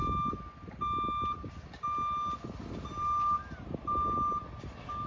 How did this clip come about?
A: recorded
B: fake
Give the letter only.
A